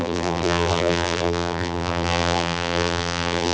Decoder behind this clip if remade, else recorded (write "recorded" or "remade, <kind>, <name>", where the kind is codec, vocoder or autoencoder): remade, vocoder, BigVGAN v2